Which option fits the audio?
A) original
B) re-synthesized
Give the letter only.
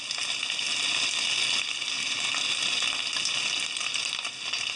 A